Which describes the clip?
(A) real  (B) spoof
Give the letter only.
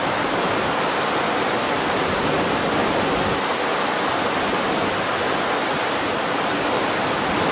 A